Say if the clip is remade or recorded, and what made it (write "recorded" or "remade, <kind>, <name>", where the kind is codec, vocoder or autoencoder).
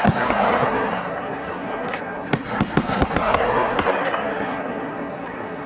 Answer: remade, codec, SNAC